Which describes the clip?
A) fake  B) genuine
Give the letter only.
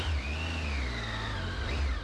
B